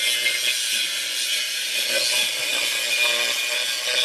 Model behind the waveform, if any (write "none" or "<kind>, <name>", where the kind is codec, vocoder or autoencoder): none